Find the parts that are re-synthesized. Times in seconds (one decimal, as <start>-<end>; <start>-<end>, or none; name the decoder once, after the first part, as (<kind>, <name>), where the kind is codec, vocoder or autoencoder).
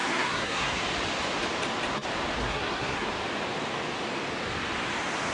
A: 0.0-0.8 (codec, SNAC); 2.4-3.1